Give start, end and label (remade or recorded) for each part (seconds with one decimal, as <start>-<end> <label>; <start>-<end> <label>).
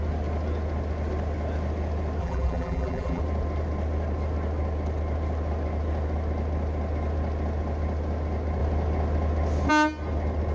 0.0-2.2 recorded; 2.2-3.2 remade; 3.2-10.5 recorded